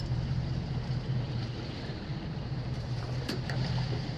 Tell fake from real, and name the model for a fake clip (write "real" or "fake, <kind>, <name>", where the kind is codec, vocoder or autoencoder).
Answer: fake, vocoder, BigVGAN v2